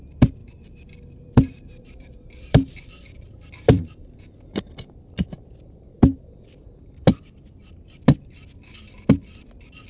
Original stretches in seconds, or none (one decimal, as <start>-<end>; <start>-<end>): 0.0-0.4; 4.2-9.9